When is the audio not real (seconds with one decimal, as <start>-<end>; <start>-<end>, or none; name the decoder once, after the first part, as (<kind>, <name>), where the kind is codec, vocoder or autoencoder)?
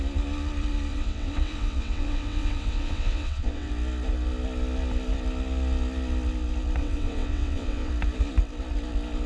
0.9-3.7 (vocoder, WaveNeXt); 6.8-7.9